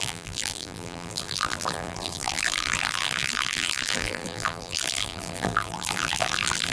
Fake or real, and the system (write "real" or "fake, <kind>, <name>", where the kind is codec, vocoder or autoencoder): fake, vocoder, BigVGAN v2